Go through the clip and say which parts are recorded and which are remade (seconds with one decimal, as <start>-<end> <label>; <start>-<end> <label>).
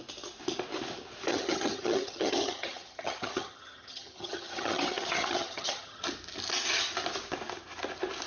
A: 0.0-1.3 recorded; 1.3-6.0 remade; 6.0-8.3 recorded